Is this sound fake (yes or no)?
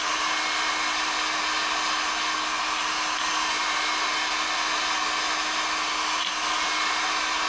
no